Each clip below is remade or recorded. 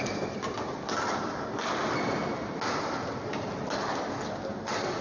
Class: recorded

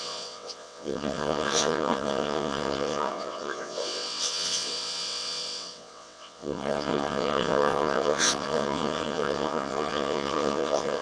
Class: remade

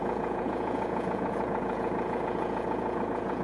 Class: remade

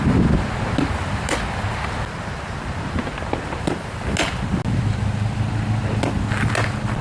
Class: recorded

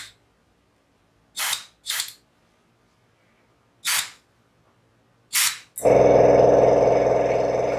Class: recorded